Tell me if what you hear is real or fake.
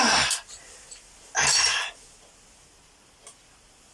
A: real